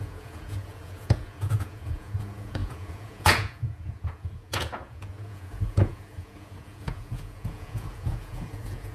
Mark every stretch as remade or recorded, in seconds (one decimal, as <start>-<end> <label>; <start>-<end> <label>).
0.0-8.9 remade